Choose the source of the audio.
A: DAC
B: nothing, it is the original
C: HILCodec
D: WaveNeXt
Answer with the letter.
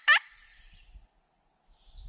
B